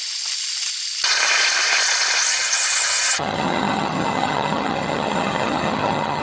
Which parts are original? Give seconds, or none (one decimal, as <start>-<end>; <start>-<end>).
0.0-2.3